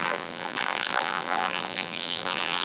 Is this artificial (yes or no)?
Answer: yes